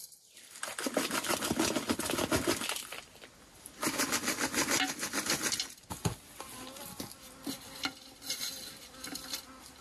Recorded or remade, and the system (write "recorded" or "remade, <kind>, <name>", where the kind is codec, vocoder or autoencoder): recorded